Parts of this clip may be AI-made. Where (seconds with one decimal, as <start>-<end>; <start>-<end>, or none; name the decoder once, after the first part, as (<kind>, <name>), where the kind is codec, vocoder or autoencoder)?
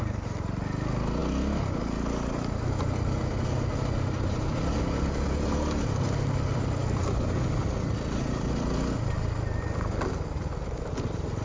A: none